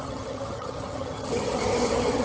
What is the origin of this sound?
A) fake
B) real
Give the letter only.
A